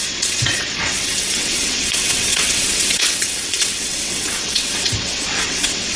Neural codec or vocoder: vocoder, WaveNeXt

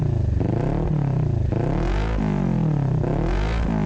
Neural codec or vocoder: none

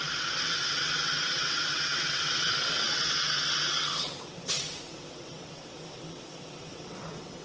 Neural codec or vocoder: vocoder, WaveNeXt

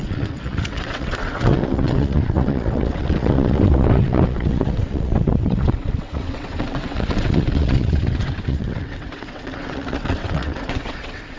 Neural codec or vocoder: vocoder, WaveNeXt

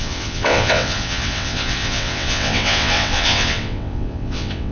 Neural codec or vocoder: vocoder, WaveNeXt